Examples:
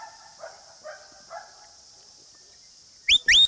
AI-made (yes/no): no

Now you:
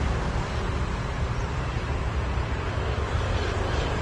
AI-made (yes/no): yes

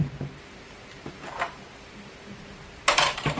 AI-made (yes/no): yes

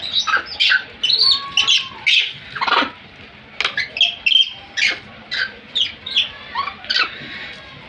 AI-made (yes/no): no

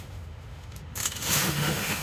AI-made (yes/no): yes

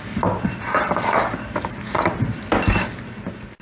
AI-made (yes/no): no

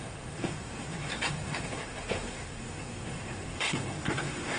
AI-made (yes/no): yes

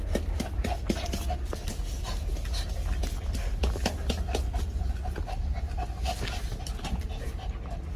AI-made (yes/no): no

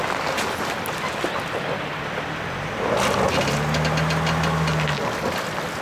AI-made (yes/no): no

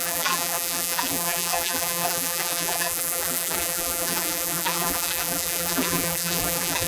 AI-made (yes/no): yes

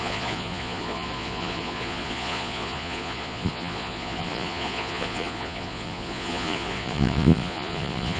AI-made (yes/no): yes